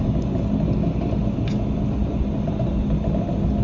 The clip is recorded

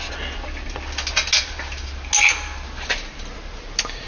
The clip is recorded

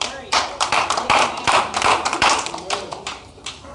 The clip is remade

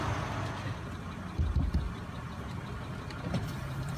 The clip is recorded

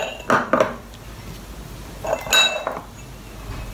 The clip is recorded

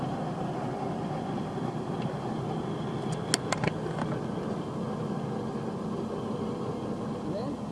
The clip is recorded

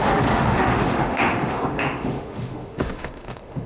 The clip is remade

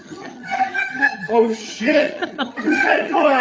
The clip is remade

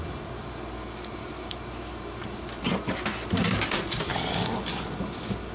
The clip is remade